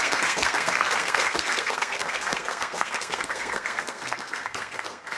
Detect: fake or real fake